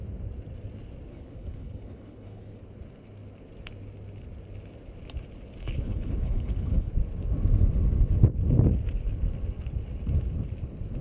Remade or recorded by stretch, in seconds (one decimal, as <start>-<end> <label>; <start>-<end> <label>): 0.0-1.1 recorded; 1.1-2.6 remade; 2.6-5.6 recorded; 5.6-6.9 remade; 6.9-11.0 recorded